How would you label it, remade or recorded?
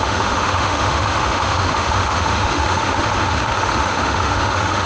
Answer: remade